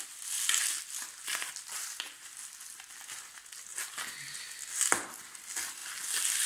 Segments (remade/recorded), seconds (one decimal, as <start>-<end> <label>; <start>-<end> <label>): 0.0-1.3 recorded; 1.3-2.5 remade; 2.5-5.8 recorded; 5.8-6.5 remade